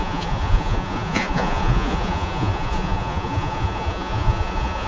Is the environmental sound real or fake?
fake